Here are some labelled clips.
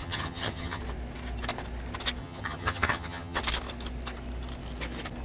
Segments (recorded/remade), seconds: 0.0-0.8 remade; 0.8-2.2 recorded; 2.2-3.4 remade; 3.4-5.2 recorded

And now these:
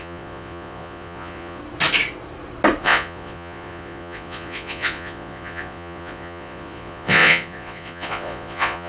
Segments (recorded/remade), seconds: 0.0-1.6 remade; 1.6-2.8 recorded; 2.8-8.9 remade

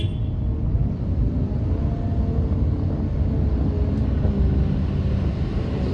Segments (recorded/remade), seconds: 0.0-5.9 recorded

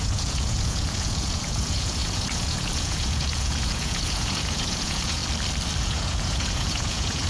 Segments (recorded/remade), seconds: 0.0-5.2 remade; 5.2-5.8 recorded; 5.8-7.3 remade

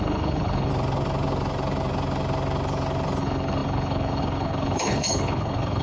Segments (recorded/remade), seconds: 0.0-0.7 remade; 0.7-3.2 recorded; 3.2-5.8 remade